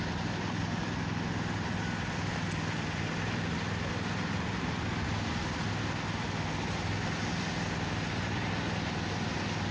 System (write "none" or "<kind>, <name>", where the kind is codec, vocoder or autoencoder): none